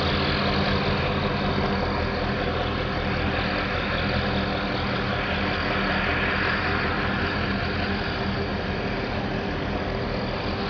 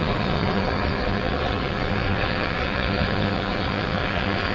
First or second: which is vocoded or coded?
second